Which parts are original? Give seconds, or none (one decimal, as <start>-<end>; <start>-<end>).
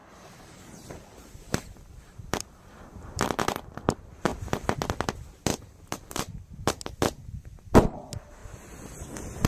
3.2-5.5; 6.8-9.5